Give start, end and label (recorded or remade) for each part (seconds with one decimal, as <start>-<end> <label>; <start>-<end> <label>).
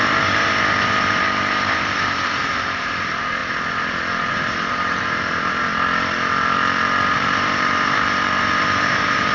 0.0-3.4 remade; 3.4-4.3 recorded; 4.3-5.7 remade; 5.7-7.1 recorded; 7.1-9.3 remade